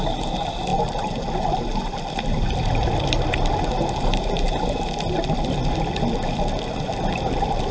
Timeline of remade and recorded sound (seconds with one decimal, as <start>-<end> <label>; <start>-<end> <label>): 0.0-7.7 recorded